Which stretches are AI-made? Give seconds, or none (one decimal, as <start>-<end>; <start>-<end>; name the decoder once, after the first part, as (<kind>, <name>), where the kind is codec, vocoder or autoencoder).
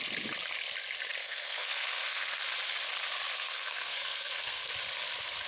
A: 1.2-2.4 (codec, SNAC); 3.3-4.7